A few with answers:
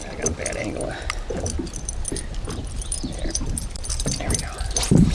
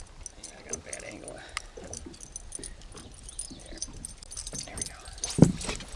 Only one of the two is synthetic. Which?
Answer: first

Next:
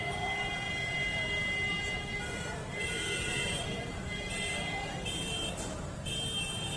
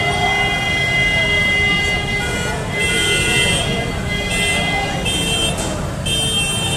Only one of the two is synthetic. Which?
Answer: first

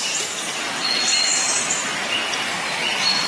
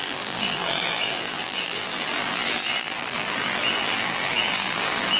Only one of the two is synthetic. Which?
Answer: second